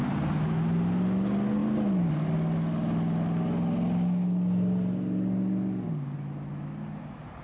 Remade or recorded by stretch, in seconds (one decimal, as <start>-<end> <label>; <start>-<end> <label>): 0.0-7.4 recorded